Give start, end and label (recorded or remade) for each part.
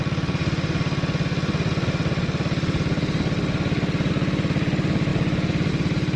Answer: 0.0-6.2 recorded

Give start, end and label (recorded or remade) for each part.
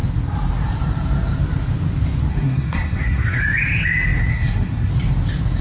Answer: 0.0-2.3 recorded; 2.3-3.4 remade; 3.4-4.3 recorded; 4.3-4.9 remade; 4.9-5.6 recorded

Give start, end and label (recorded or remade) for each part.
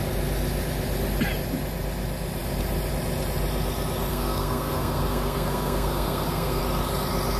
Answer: 0.0-4.1 recorded; 4.1-6.6 remade; 6.6-7.4 recorded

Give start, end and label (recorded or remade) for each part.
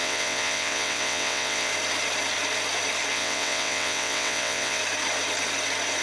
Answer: 0.0-1.7 remade; 1.7-3.1 recorded; 3.1-4.8 remade; 4.8-6.0 recorded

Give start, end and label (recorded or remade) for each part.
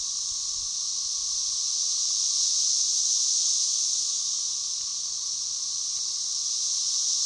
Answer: 0.0-4.9 recorded; 4.9-6.5 remade; 6.5-7.3 recorded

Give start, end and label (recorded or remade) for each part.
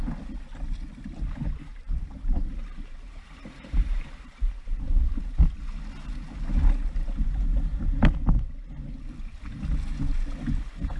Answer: 0.0-1.7 recorded; 1.7-5.2 remade; 5.2-11.0 recorded